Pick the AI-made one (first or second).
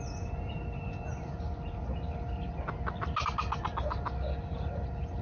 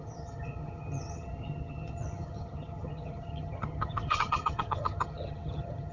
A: second